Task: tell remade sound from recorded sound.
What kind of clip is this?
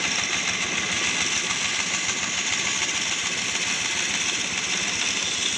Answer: recorded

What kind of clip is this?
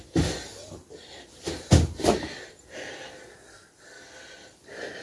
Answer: recorded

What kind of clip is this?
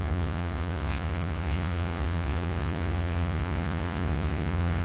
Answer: remade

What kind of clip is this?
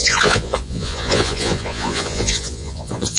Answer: remade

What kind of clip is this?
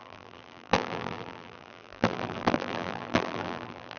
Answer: remade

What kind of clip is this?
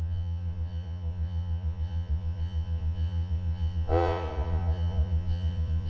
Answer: remade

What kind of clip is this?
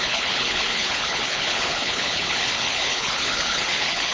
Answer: remade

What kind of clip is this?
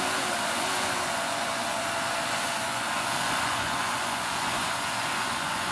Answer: remade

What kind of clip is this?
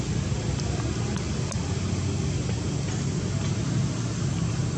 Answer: recorded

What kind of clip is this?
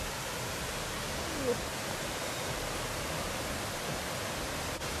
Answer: recorded